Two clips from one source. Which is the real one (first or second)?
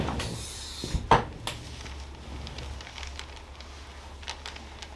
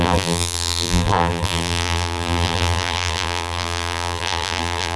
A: first